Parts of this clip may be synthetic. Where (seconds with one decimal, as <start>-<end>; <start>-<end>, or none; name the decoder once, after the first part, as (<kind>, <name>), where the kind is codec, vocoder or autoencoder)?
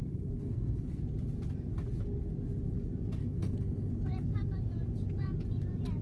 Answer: 0.0-1.0 (codec, SNAC); 3.2-3.9